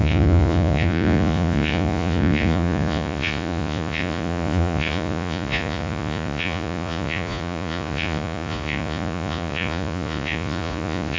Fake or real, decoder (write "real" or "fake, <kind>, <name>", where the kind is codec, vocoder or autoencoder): fake, vocoder, Vocos